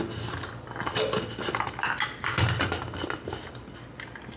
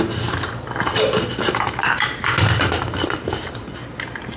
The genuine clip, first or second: first